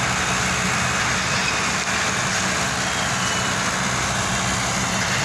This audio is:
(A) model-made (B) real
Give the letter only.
B